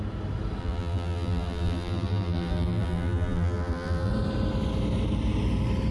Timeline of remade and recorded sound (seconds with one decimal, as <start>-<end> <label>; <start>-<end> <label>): 0.0-0.6 recorded; 0.6-4.1 remade; 4.1-5.9 recorded